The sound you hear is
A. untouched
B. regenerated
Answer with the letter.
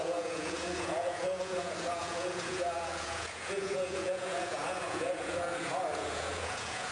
B